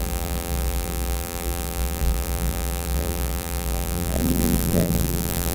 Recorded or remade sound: remade